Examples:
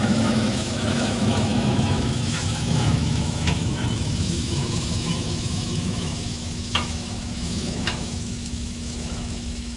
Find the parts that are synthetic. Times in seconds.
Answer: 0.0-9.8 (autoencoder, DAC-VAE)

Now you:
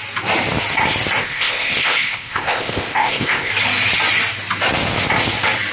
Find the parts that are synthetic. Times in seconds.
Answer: 1.2-3.5 (codec, ZipCodec)